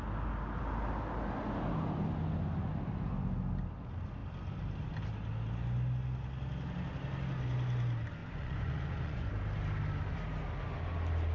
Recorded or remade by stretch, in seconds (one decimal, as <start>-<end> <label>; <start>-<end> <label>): 0.0-8.2 recorded; 8.2-9.3 remade; 9.3-11.3 recorded